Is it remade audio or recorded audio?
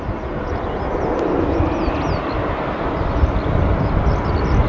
recorded